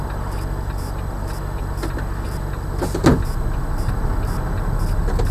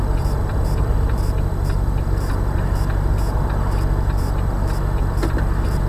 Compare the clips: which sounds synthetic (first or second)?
second